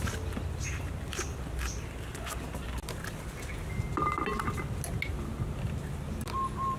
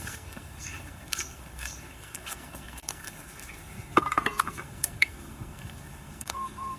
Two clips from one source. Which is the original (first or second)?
first